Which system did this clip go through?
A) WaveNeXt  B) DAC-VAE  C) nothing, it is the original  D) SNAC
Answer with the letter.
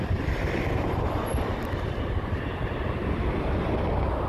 C